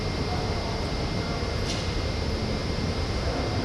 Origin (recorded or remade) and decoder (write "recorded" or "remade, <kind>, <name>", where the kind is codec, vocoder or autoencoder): recorded